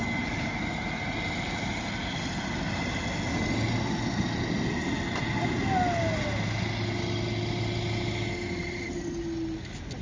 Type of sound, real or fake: real